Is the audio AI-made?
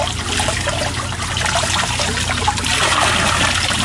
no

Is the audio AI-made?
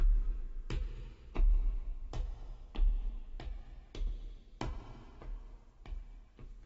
no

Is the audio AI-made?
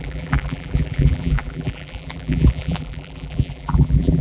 yes